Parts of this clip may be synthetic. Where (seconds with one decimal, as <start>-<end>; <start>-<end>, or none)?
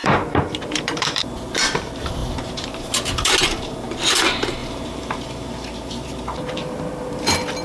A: 0.0-7.6